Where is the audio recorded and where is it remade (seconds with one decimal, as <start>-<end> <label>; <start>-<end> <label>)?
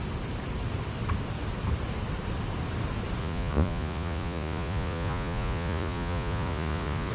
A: 0.0-3.2 recorded; 3.2-7.1 remade